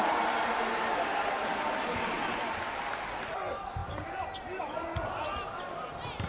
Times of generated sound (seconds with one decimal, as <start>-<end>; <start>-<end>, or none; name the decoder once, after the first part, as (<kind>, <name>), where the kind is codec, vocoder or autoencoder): none